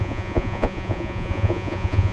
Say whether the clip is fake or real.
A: fake